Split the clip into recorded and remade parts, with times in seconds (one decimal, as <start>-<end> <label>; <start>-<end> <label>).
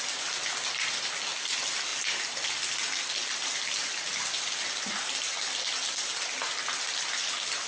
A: 0.0-7.7 recorded